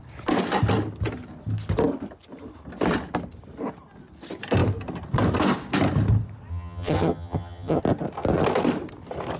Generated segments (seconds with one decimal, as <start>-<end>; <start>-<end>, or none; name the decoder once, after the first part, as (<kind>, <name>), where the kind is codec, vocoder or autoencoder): 6.5-7.8 (vocoder, HiFi-GAN)